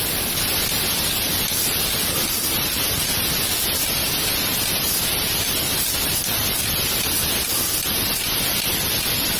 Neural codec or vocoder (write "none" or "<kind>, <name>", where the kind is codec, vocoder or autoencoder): none